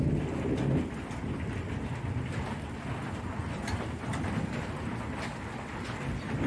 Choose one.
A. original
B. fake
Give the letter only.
A